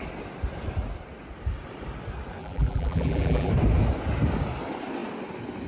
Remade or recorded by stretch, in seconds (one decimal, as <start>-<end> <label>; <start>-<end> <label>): 0.0-2.4 recorded; 2.4-3.5 remade; 3.5-5.7 recorded